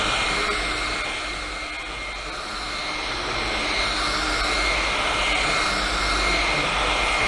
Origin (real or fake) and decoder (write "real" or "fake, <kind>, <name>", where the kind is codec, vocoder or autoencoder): real